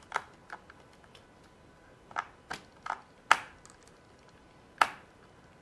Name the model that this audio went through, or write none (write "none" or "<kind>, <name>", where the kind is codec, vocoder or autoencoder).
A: none